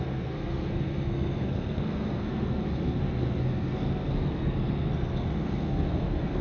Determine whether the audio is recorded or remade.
remade